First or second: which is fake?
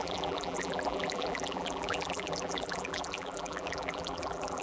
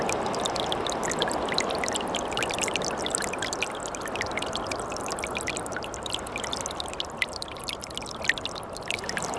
first